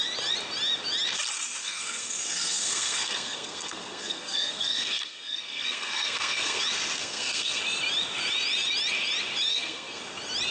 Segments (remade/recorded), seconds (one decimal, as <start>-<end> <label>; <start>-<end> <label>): 0.0-1.6 recorded; 1.6-6.6 remade; 6.6-7.0 recorded; 7.0-7.6 remade; 7.6-9.5 recorded; 9.5-10.0 remade; 10.0-10.5 recorded